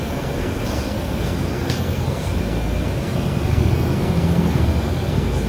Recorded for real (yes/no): no